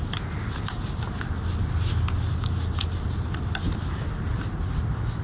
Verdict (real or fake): real